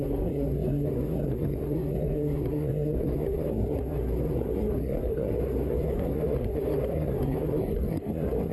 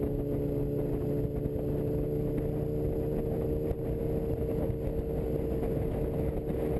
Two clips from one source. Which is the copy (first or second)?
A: first